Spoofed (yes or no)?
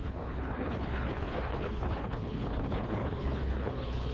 yes